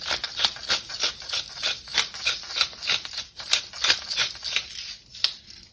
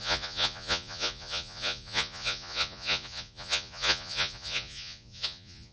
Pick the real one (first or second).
first